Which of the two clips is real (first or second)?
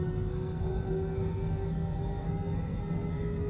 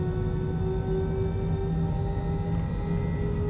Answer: second